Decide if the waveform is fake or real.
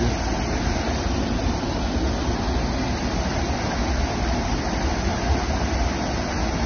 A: real